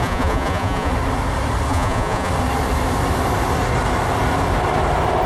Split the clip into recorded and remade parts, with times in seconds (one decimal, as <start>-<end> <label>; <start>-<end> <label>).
0.0-0.9 remade; 0.9-1.7 recorded; 1.7-2.3 remade; 2.3-5.3 recorded